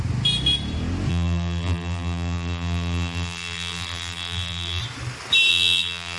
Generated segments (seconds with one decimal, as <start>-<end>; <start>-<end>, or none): 1.1-4.8; 5.5-6.2